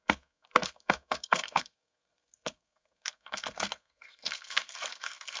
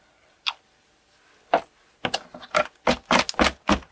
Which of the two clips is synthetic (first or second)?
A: first